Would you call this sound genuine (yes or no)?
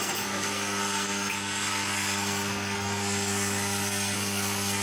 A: no